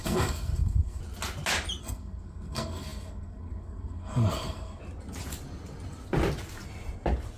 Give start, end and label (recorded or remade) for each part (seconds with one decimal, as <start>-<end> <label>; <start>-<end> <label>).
0.0-1.0 remade; 1.0-1.8 recorded; 1.8-4.8 remade; 4.8-7.4 recorded